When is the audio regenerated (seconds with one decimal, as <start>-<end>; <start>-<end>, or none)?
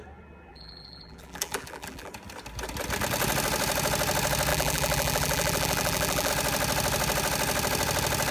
0.5-2.1; 4.5-6.3